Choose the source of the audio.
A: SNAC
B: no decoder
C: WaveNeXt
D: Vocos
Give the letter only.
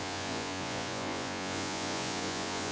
D